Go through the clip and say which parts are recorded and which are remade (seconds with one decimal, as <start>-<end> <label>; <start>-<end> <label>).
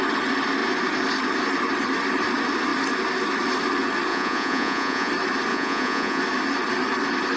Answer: 0.0-4.1 recorded; 4.1-5.1 remade; 5.1-5.5 recorded; 5.5-6.2 remade; 6.2-7.4 recorded